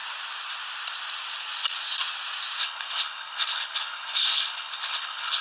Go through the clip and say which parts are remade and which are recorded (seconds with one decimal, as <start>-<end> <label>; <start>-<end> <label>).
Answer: 0.0-2.6 recorded; 2.6-5.4 remade

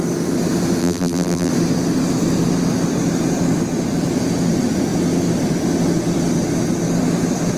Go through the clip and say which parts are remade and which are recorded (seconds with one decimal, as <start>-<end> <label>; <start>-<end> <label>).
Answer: 0.0-0.8 recorded; 0.8-1.5 remade; 1.5-7.6 recorded